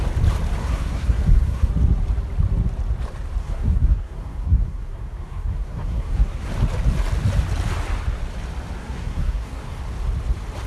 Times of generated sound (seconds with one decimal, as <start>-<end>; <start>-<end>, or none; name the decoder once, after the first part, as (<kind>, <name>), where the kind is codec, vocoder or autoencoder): 0.6-1.7 (codec, SNAC); 3.4-6.5; 8.8-9.8